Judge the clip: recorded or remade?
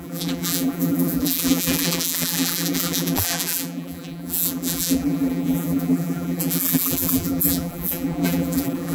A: remade